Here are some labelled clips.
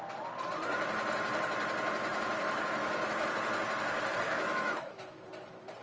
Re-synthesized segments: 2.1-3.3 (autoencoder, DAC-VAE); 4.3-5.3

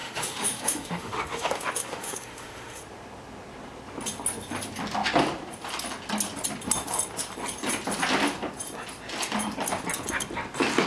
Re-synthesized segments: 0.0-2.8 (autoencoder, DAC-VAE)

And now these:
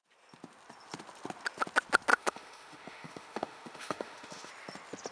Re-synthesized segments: 2.1-4.5 (autoencoder, DAC-VAE)